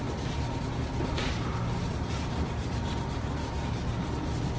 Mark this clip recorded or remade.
recorded